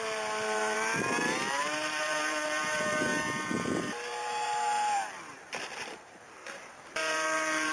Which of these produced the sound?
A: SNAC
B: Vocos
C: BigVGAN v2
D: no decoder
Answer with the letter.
C